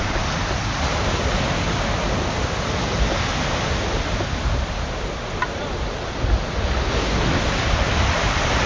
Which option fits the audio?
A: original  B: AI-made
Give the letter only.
A